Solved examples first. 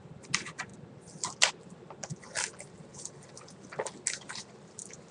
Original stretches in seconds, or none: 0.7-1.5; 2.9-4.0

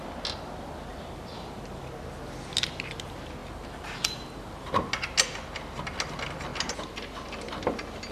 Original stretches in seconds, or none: 0.0-0.9; 1.8-3.4; 4.7-8.1

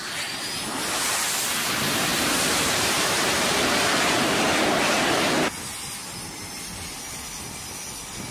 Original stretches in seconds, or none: 0.0-2.1; 5.2-8.3

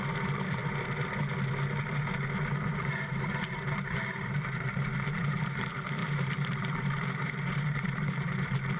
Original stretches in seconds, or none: 0.6-2.6

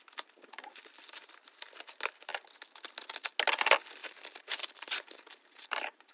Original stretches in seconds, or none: 0.0-0.5; 1.8-4.0

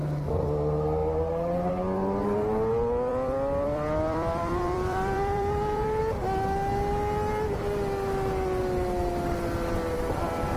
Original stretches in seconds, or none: 0.0-3.1; 6.0-10.6

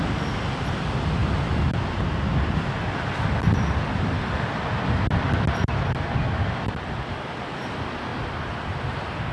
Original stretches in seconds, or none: 0.0-9.3

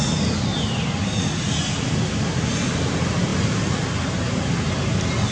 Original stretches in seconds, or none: 0.0-0.5; 2.5-5.3